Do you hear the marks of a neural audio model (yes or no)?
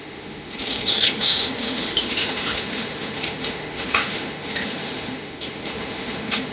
yes